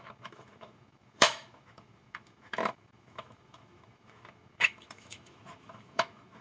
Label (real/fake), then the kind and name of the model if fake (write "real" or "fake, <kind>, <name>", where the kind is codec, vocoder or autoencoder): fake, autoencoder, DAC-VAE